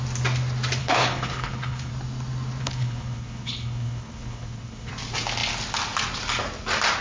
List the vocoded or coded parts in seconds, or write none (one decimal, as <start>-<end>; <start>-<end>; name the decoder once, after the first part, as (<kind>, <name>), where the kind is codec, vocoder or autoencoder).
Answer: 0.8-1.9 (codec, HILCodec); 2.6-4.9